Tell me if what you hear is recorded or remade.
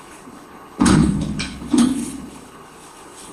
remade